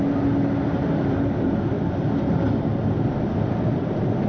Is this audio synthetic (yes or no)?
no